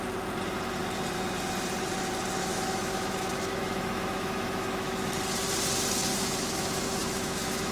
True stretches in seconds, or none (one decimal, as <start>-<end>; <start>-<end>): 0.0-2.4; 5.1-6.1